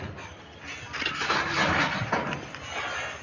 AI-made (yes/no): no